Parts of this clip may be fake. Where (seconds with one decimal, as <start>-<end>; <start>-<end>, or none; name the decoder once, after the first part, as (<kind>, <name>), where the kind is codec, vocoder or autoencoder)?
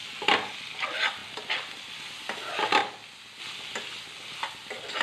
none